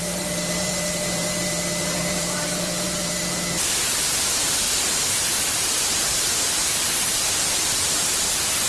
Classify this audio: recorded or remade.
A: remade